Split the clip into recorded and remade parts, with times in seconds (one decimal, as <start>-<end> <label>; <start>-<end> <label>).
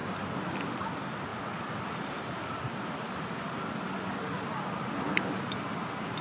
0.0-6.2 recorded